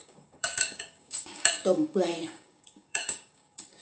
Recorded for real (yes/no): no